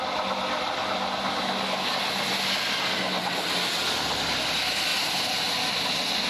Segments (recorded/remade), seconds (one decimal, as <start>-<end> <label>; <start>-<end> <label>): 0.0-6.3 recorded